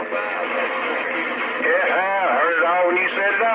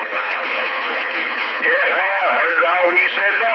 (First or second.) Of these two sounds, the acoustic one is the first